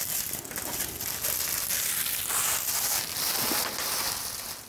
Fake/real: real